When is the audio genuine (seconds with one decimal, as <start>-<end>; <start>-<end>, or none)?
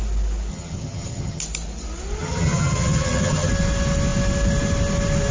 0.0-0.5; 1.4-2.2; 3.5-5.3